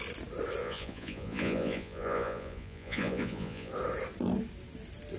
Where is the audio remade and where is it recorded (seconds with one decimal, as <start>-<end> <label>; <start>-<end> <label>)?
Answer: 0.0-0.6 recorded; 0.6-3.7 remade; 3.7-5.2 recorded